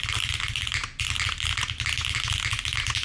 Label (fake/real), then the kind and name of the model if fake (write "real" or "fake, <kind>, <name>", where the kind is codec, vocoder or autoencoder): real